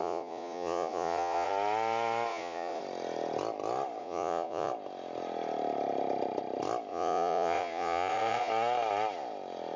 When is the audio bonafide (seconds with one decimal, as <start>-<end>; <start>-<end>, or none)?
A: 1.5-2.3; 2.8-4.0; 4.7-6.9; 8.5-9.8